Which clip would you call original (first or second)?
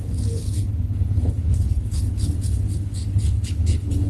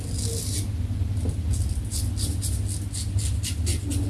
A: second